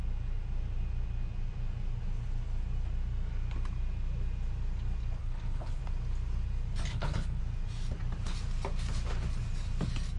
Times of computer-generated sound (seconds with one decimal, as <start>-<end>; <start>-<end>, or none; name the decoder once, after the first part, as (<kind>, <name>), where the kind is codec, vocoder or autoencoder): 5.2-5.8 (codec, HILCodec); 6.9-7.4